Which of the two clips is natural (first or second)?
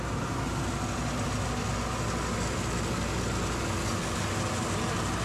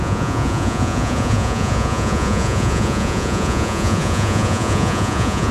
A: first